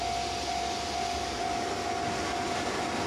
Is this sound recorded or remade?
recorded